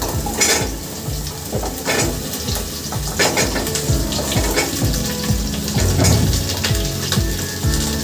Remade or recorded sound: recorded